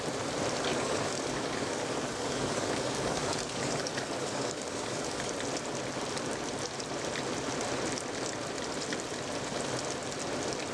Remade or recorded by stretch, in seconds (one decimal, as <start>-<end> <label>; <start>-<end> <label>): 0.0-0.7 recorded; 0.7-5.3 remade; 5.3-10.7 recorded